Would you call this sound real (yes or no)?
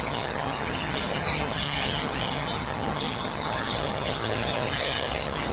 no